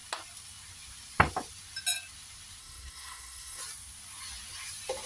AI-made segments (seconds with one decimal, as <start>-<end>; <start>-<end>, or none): 2.6-3.6